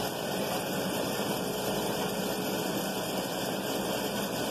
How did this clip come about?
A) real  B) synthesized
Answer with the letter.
A